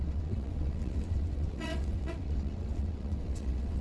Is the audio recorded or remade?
remade